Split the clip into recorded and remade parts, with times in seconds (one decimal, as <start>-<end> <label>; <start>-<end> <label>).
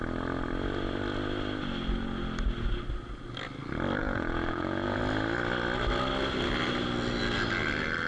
0.0-4.0 recorded; 4.0-5.0 remade; 5.0-8.1 recorded